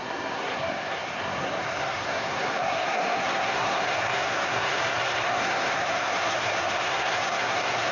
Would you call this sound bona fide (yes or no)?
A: no